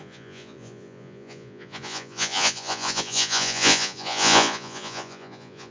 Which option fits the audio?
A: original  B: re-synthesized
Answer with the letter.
B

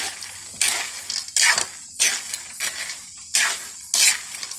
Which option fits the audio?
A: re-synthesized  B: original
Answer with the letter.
B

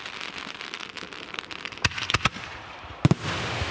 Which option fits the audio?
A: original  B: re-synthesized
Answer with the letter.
B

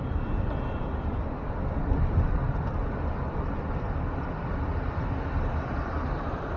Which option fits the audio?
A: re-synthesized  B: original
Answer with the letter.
B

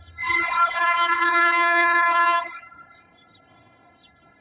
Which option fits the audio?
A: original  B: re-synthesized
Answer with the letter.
B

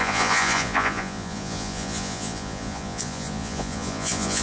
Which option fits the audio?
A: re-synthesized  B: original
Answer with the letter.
A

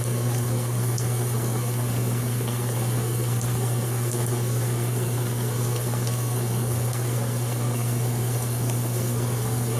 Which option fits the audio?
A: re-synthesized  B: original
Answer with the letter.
A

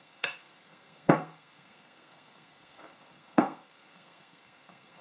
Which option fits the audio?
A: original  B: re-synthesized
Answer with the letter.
B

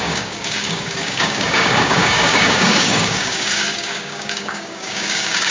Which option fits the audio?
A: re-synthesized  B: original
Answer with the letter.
A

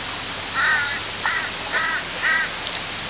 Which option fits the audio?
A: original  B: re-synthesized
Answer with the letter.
A